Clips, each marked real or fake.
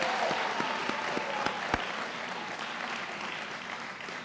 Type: real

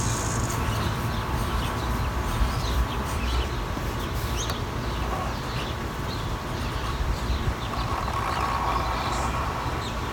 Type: fake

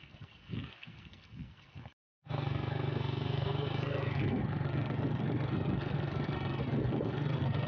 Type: fake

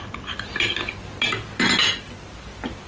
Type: real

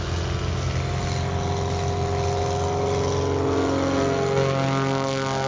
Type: real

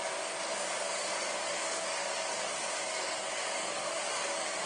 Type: fake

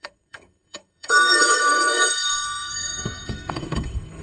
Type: fake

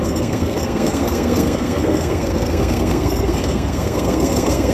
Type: fake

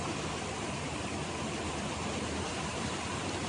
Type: fake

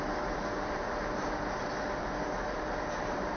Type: fake